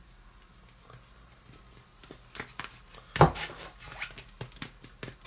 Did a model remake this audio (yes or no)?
no